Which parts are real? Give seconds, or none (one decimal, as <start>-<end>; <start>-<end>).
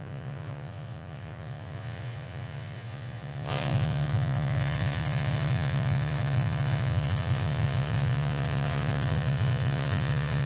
none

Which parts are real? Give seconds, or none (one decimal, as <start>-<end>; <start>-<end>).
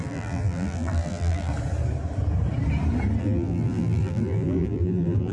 1.5-3.2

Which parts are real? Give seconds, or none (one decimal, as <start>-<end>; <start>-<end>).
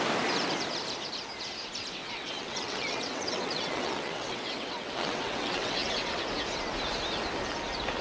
0.0-2.0; 6.2-8.0